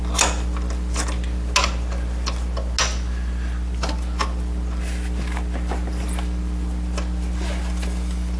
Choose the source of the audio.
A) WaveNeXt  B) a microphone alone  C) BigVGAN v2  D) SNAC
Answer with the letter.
B